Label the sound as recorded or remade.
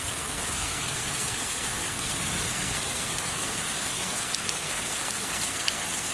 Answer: remade